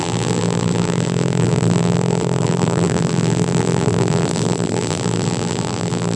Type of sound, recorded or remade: remade